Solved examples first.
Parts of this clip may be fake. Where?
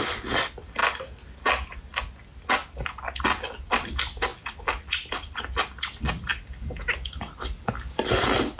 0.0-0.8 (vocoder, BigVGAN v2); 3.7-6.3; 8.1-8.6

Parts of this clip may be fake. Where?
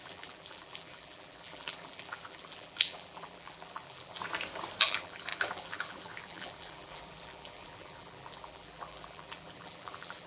0.0-4.2 (vocoder, BigVGAN v2); 4.8-10.3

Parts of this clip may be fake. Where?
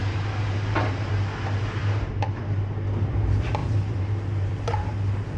0.0-1.1 (vocoder, BigVGAN v2); 1.8-2.4; 3.6-4.8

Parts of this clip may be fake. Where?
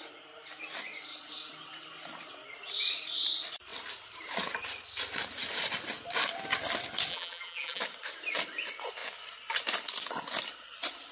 7.1-7.8 (vocoder, BigVGAN v2)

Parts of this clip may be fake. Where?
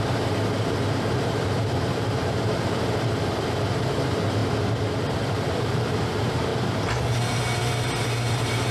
0.0-4.4 (vocoder, BigVGAN v2); 5.0-6.5; 7.6-8.7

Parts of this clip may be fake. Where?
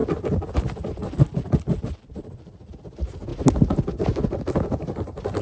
1.0-2.7 (vocoder, BigVGAN v2); 3.3-3.9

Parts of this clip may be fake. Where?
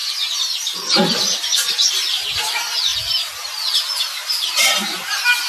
0.0-2.9 (vocoder, BigVGAN v2); 4.3-5.5